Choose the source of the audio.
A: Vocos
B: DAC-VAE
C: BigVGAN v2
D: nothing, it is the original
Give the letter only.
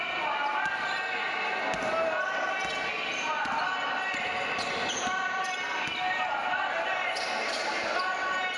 D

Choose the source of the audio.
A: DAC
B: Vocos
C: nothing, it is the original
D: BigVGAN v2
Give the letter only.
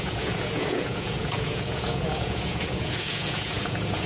B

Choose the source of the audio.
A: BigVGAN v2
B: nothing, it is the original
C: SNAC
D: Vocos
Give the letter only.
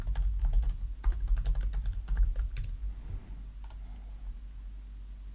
B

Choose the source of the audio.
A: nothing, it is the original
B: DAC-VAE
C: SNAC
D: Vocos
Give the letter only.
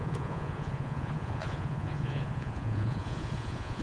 D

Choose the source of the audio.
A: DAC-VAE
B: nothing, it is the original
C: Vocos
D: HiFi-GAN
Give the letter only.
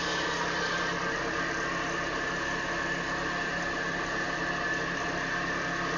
B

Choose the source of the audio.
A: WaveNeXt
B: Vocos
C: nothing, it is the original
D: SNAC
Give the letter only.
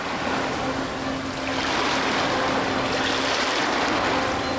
C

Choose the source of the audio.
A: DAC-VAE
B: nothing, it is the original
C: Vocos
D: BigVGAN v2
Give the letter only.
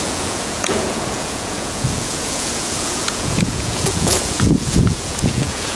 C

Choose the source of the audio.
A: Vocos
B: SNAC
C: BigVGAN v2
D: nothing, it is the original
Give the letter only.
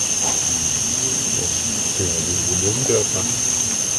D